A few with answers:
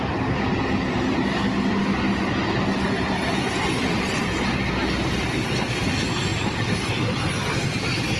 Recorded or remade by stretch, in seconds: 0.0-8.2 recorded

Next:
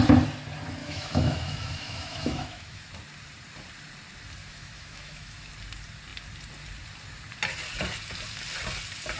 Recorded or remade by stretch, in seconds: 0.0-0.8 recorded; 0.8-2.9 remade; 2.9-4.4 recorded; 4.4-5.5 remade; 5.5-9.2 recorded

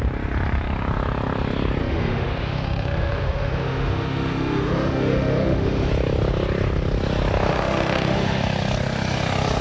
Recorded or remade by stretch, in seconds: 0.0-1.8 recorded; 1.8-5.9 remade; 5.9-7.5 recorded; 7.5-8.4 remade; 8.4-9.6 recorded

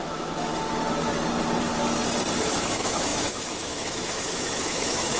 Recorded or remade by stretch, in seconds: 0.0-0.5 remade; 0.5-2.4 recorded; 2.4-5.2 remade

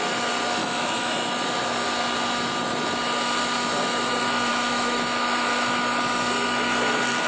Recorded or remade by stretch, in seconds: 0.0-0.6 recorded; 0.6-1.3 remade; 1.3-4.5 recorded; 4.5-6.0 remade; 6.0-7.3 recorded

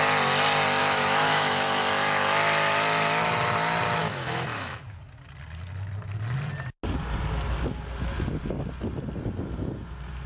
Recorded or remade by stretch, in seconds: 0.0-0.8 recorded; 0.8-1.8 remade; 1.8-4.0 recorded; 4.0-4.8 remade; 4.8-10.3 recorded

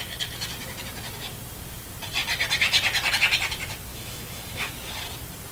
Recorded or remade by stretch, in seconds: 0.0-3.9 recorded; 3.9-4.7 remade; 4.7-5.5 recorded